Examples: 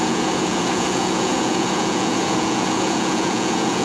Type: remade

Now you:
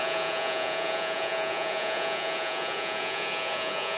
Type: remade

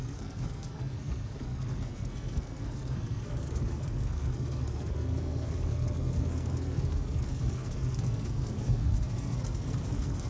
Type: remade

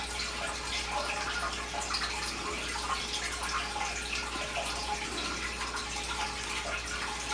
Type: recorded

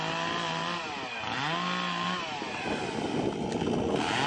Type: recorded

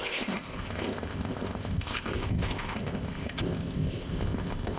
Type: remade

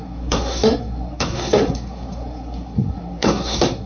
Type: remade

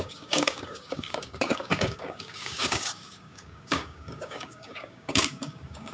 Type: remade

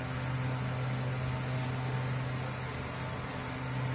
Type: recorded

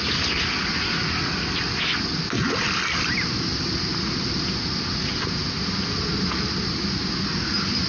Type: recorded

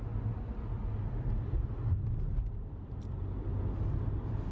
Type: recorded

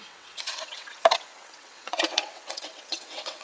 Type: remade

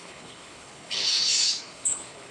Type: remade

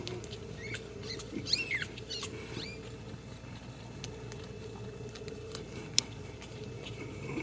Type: recorded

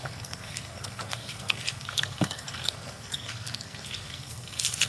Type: remade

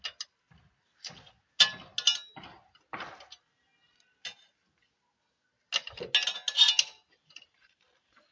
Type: recorded